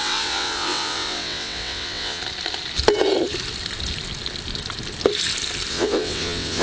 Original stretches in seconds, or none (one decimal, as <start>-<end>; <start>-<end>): 2.2-5.7